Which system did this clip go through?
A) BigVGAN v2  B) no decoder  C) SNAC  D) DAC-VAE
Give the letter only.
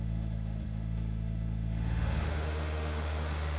D